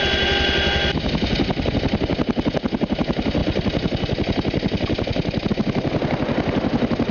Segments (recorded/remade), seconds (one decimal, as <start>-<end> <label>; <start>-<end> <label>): 0.0-7.1 recorded